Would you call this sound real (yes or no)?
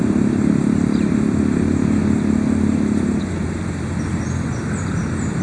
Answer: yes